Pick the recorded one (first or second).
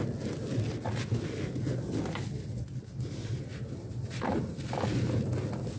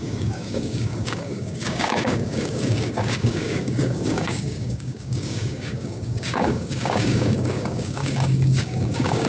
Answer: first